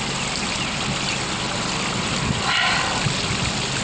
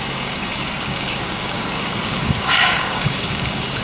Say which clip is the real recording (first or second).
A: first